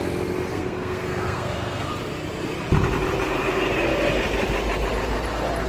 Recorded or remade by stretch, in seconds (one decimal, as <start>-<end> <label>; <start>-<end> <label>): 0.0-0.5 recorded; 0.5-1.9 remade; 1.9-5.7 recorded